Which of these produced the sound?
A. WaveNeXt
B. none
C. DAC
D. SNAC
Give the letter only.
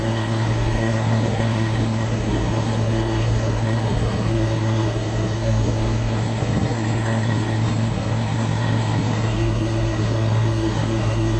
D